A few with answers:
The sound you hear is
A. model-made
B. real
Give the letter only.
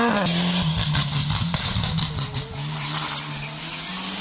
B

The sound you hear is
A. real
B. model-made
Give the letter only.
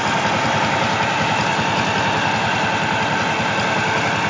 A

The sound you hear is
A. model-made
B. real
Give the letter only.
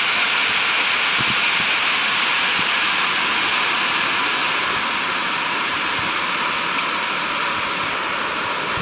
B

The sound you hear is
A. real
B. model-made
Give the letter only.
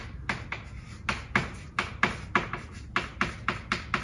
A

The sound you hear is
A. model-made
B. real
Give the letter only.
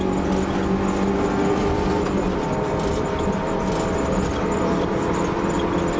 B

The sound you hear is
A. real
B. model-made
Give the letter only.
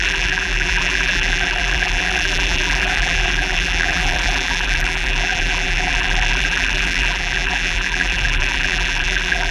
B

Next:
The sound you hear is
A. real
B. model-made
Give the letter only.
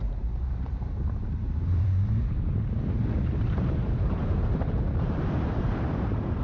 B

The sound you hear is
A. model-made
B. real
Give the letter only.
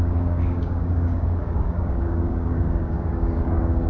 A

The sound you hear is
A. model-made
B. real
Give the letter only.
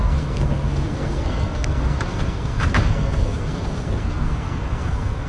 A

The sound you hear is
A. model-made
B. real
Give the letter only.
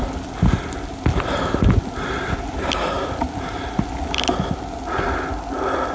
B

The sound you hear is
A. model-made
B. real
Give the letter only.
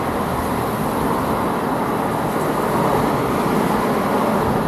B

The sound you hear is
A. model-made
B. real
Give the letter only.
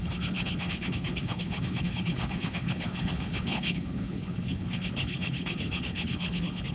A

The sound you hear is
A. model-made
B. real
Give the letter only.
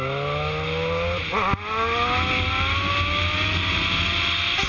B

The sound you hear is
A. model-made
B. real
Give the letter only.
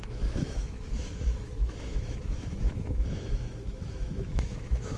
A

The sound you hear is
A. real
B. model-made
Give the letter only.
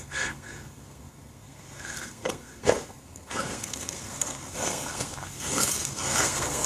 B